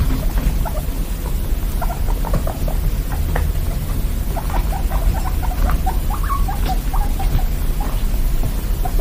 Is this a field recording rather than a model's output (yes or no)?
yes